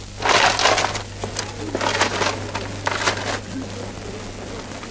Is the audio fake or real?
real